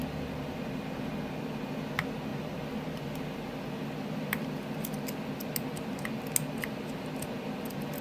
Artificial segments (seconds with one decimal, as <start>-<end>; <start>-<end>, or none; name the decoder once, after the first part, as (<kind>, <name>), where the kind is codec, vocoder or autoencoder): none